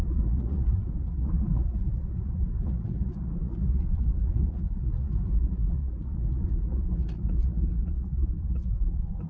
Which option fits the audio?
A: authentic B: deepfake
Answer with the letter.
B